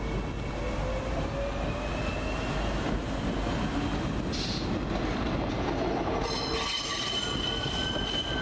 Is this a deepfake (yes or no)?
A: no